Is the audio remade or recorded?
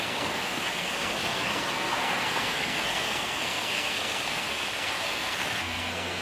remade